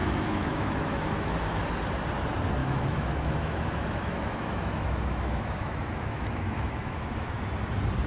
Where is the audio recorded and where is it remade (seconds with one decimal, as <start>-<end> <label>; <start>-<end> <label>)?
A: 0.0-1.6 remade; 1.6-2.6 recorded; 2.6-7.4 remade; 7.4-8.1 recorded